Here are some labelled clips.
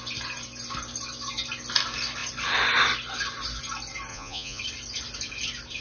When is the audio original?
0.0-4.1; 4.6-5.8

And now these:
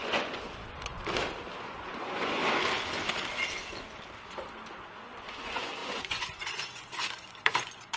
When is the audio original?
1.0-1.7; 2.4-5.0

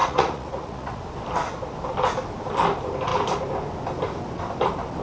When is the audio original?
1.0-5.0

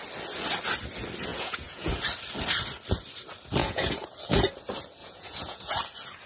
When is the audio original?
0.0-1.3; 1.9-3.6; 4.1-5.0; 5.7-6.3